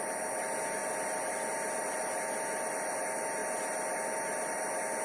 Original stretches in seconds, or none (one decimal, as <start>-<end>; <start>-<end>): 0.0-5.0